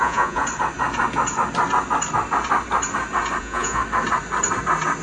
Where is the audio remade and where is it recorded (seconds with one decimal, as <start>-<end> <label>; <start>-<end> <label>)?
0.0-0.4 remade; 0.4-3.4 recorded; 3.4-3.8 remade; 3.8-5.0 recorded